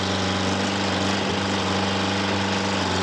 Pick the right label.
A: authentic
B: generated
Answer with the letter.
A